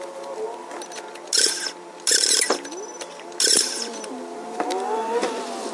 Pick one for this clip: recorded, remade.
recorded